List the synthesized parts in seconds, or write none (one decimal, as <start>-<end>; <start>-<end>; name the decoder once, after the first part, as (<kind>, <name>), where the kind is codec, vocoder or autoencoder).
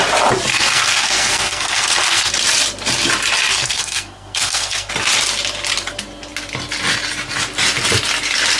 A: 0.5-2.3 (codec, SNAC); 3.5-4.9